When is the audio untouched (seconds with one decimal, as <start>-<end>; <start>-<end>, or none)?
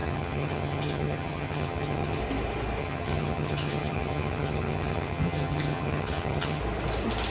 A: 2.2-2.8; 6.6-7.3